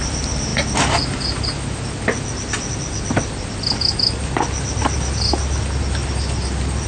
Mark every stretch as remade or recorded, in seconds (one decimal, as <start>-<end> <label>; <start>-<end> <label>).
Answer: 0.0-6.9 recorded